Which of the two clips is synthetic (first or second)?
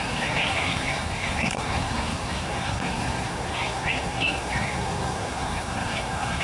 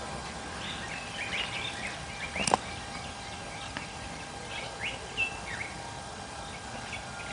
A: first